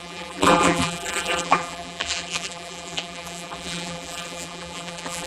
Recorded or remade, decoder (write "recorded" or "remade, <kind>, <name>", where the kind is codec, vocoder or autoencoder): remade, vocoder, BigVGAN v2